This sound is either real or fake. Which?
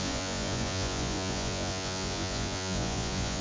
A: fake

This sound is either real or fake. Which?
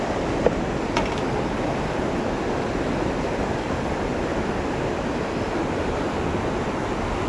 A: real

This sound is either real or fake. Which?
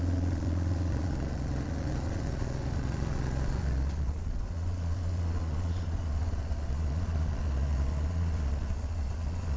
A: fake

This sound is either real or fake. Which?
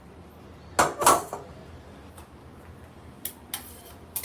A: real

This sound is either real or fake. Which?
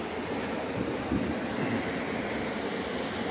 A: real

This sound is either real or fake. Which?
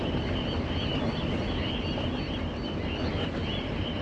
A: real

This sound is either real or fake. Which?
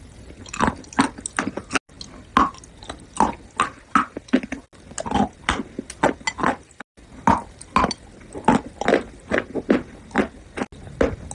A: real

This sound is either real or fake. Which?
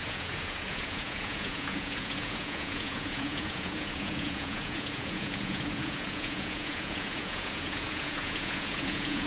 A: fake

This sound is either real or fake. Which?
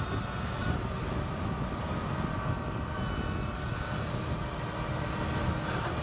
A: real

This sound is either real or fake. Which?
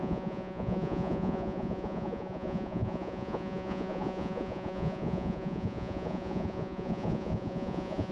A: fake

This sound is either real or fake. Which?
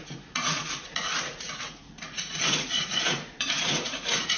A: fake